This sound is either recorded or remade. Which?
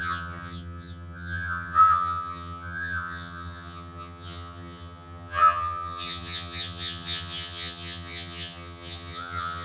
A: remade